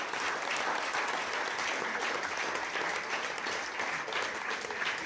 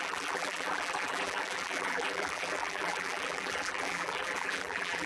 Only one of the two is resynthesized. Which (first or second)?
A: second